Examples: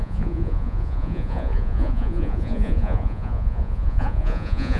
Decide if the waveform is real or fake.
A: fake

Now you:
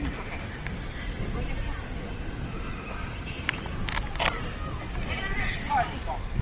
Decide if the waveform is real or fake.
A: real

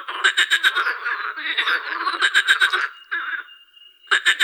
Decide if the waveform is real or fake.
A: real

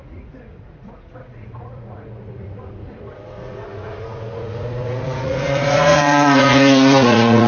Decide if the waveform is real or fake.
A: fake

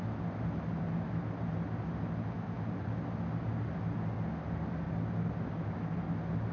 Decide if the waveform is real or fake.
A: real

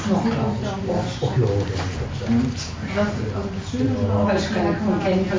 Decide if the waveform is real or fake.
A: real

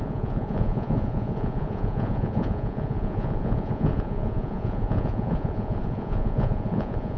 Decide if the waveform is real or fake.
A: fake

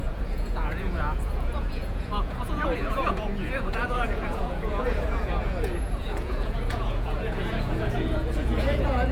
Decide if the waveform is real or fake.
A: fake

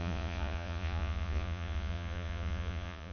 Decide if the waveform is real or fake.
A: fake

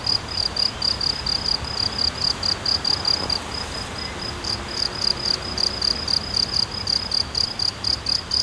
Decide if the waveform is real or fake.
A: real